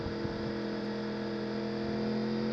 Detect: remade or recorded recorded